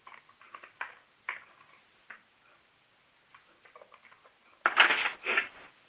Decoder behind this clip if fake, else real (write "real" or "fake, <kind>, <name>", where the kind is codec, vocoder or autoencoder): real